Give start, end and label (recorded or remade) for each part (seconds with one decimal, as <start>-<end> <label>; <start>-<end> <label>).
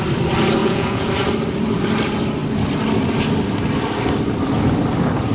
0.0-0.6 recorded; 0.6-1.1 remade; 1.1-5.3 recorded